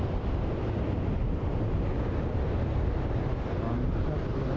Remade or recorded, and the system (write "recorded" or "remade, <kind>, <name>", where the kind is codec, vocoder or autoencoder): recorded